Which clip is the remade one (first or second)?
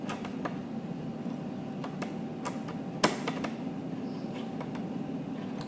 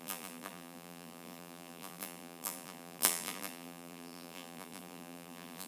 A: second